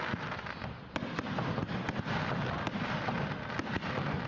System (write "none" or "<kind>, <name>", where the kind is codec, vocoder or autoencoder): none